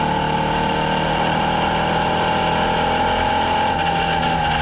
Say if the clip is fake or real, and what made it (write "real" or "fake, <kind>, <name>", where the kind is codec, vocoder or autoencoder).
real